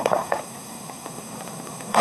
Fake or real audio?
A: fake